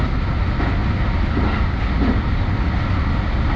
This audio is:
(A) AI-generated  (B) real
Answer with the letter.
B